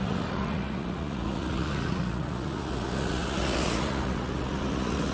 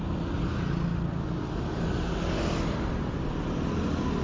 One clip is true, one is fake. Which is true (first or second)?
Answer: second